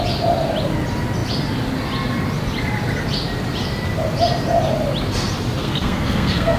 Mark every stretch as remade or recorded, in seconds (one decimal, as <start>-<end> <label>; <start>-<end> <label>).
0.0-5.6 recorded; 5.6-6.6 remade